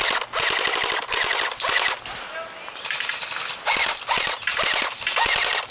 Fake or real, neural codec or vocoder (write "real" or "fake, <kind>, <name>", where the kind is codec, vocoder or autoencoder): real